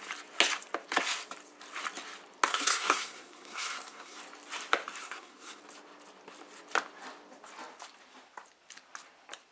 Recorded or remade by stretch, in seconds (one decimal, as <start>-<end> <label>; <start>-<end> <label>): 0.0-2.5 recorded; 2.5-4.2 remade; 4.2-5.0 recorded; 5.0-5.6 remade; 5.6-9.5 recorded